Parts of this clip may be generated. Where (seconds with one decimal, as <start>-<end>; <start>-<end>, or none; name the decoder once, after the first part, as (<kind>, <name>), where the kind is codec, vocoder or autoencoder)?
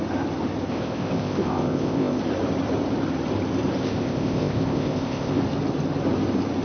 0.7-2.2 (codec, ZipCodec); 3.8-5.4